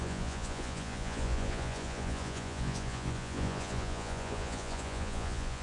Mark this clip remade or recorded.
remade